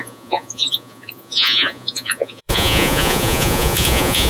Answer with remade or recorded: remade